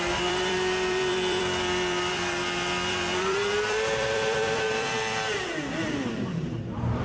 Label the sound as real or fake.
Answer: fake